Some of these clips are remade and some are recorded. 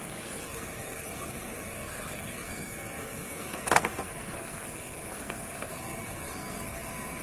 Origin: remade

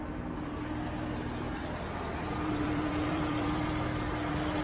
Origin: remade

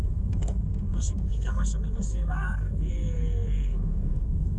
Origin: remade